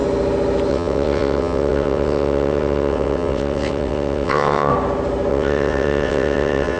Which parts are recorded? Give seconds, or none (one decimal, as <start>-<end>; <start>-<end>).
0.0-0.7; 4.7-5.3